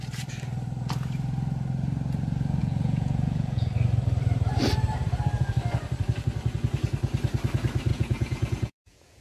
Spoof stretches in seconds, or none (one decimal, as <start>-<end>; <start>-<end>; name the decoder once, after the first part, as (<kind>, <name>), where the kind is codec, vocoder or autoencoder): 2.6-3.7 (vocoder, Vocos); 7.9-9.2